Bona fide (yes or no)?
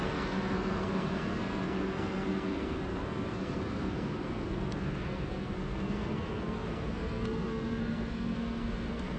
no